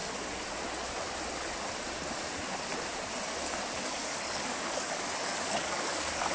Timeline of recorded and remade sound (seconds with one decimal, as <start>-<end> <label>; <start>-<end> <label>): 0.0-3.8 recorded; 3.8-6.3 remade